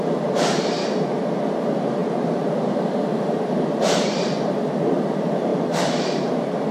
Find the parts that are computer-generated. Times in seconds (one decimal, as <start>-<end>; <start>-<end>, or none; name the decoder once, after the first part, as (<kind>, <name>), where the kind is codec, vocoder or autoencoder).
0.0-5.5 (vocoder, BigVGAN v2); 6.0-6.7